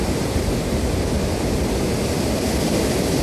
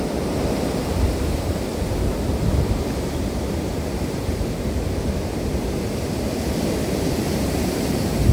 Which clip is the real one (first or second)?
first